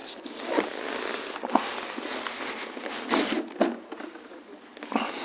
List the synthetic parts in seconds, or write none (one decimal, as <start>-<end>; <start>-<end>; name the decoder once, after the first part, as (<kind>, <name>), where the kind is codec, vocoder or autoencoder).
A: none